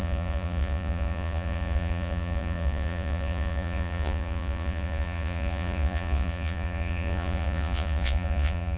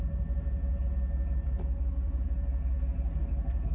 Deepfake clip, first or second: first